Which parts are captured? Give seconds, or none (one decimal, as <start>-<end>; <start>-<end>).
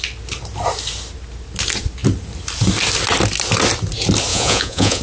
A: 0.0-4.3